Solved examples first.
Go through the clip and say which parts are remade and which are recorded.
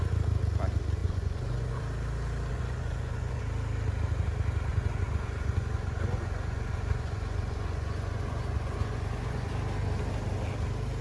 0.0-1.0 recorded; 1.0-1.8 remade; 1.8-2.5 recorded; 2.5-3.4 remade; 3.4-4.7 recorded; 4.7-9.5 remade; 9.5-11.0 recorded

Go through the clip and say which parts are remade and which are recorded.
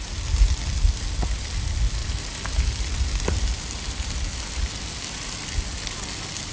0.0-6.5 recorded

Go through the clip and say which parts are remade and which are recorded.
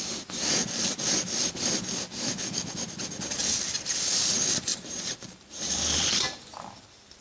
0.0-4.7 recorded; 4.7-5.7 remade; 5.7-7.2 recorded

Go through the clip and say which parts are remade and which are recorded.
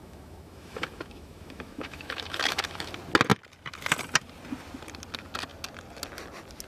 0.0-2.9 remade; 2.9-6.7 recorded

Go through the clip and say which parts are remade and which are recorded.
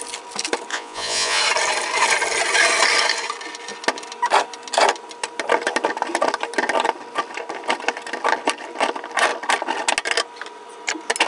0.0-0.7 recorded; 0.7-1.4 remade; 1.4-11.3 recorded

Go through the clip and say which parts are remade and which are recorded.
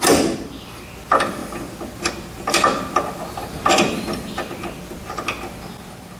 0.0-1.4 recorded; 1.4-5.1 remade; 5.1-6.2 recorded